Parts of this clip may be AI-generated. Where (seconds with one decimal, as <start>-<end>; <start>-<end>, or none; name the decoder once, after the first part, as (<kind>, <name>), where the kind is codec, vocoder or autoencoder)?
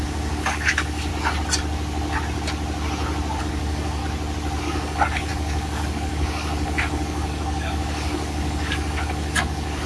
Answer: 0.0-1.1 (codec, DAC); 3.4-4.0; 4.6-9.9